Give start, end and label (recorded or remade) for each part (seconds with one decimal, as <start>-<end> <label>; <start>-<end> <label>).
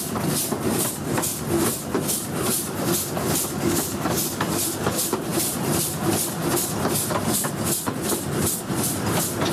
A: 0.0-5.3 recorded; 5.3-6.1 remade; 6.1-9.5 recorded